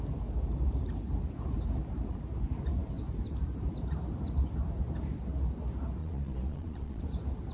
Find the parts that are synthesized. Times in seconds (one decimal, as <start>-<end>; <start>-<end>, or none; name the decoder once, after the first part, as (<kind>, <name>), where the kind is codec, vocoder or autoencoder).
6.0-7.0 (vocoder, Vocos)

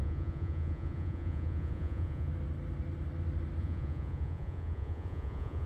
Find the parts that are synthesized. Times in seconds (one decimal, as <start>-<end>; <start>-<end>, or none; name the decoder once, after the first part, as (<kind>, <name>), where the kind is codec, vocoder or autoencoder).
0.0-2.3 (vocoder, Vocos); 3.6-5.7

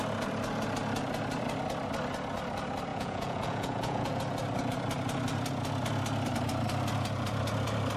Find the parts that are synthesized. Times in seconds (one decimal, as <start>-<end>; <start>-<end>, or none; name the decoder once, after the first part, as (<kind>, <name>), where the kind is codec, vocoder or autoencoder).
2.9-4.2 (vocoder, Vocos)

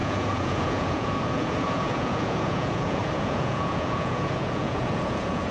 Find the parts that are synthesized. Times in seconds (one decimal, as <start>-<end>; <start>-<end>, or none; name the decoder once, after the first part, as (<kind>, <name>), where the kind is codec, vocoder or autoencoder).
0.0-5.5 (vocoder, Vocos)

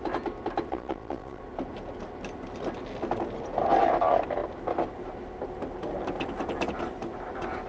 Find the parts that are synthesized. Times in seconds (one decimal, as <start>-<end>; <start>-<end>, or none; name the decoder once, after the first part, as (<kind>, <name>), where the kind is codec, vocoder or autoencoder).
0.7-1.4 (vocoder, Vocos)